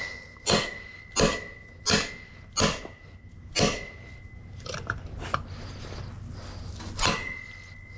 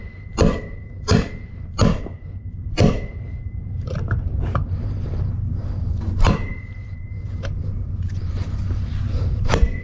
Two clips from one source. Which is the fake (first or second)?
second